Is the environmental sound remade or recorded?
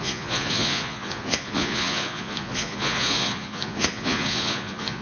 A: remade